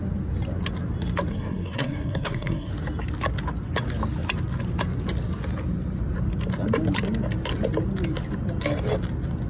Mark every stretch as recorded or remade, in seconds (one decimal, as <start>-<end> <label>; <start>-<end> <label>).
0.0-1.3 recorded; 1.3-2.7 remade; 2.7-9.5 recorded